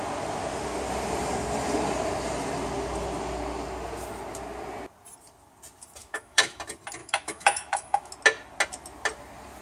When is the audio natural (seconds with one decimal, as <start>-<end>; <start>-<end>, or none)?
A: 0.0-6.0; 6.6-7.0; 8.1-9.6